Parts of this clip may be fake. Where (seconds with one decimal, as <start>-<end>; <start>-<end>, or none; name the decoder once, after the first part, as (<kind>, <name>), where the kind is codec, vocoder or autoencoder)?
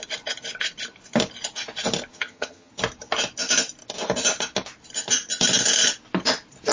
2.1-2.7 (vocoder, HiFi-GAN)